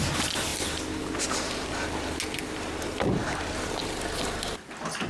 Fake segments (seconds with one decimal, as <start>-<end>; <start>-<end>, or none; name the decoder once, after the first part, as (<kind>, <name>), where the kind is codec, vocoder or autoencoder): 3.2-3.8 (vocoder, BigVGAN v2)